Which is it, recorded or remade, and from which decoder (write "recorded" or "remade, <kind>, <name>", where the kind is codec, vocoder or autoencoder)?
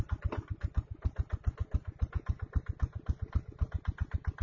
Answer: recorded